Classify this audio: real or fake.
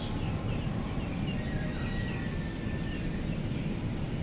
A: real